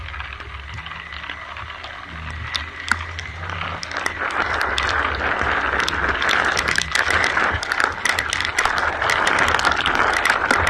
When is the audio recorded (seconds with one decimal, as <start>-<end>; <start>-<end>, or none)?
0.0-10.7